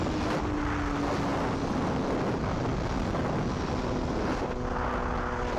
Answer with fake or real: real